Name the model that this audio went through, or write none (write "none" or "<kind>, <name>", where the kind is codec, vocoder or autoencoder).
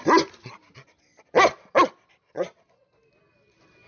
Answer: none